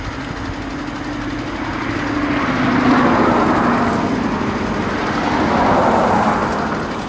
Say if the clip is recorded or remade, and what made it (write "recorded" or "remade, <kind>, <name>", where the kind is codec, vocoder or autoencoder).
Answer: recorded